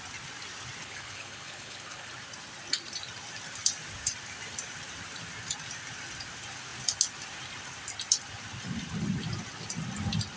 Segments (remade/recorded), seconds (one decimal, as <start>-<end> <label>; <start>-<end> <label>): 0.0-0.8 recorded; 0.8-2.1 remade; 2.1-10.4 recorded